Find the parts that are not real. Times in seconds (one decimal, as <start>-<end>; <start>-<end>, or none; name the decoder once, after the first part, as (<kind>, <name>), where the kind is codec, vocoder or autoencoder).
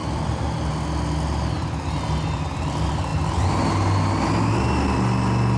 0.0-0.7 (vocoder, BigVGAN v2); 3.1-3.6